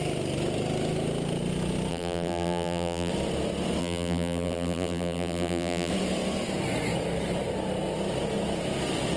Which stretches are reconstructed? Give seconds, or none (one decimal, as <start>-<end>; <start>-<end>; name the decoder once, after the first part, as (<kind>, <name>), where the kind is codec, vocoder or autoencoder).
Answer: 1.9-3.1 (vocoder, BigVGAN v2); 3.8-5.9